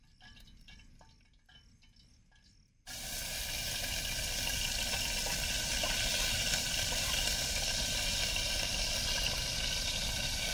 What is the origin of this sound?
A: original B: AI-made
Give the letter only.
A